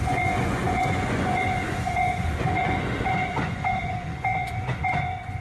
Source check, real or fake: fake